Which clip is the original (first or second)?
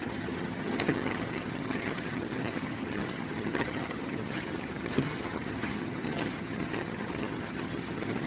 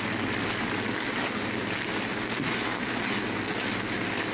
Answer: second